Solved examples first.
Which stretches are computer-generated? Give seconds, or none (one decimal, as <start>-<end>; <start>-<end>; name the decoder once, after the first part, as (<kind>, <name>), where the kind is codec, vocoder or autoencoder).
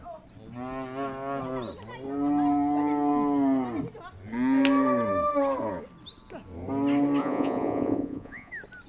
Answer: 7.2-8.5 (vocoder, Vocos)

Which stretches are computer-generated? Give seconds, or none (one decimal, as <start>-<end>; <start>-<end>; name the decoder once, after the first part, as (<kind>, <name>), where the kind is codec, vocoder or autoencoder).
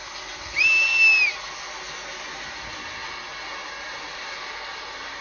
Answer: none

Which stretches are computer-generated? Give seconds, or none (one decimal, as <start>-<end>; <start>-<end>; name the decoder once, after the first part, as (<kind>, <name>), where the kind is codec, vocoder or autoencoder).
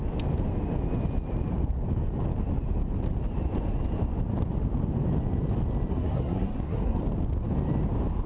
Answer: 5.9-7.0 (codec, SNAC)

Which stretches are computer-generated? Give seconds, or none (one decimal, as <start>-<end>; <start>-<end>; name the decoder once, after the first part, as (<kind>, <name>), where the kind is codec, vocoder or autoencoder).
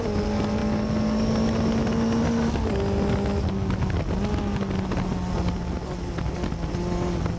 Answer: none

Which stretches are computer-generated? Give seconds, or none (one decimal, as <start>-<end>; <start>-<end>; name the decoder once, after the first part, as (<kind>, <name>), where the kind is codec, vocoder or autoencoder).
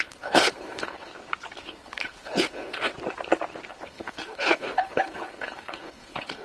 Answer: 0.0-1.1 (codec, HILCodec); 1.6-2.9; 3.7-6.4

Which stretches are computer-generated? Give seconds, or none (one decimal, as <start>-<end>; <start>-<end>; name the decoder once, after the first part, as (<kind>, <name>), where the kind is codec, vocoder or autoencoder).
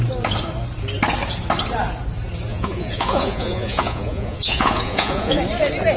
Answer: 2.5-5.4 (vocoder, Vocos)